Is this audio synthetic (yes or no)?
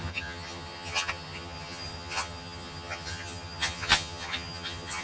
yes